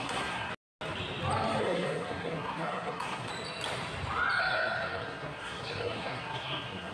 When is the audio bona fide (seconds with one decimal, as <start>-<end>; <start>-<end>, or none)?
0.5-1.6; 3.3-4.4